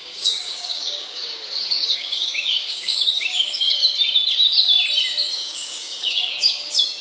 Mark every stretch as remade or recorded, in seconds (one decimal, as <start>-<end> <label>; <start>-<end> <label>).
0.0-3.8 remade; 3.8-5.3 recorded; 5.3-7.0 remade